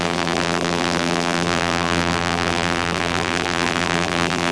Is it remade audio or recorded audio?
remade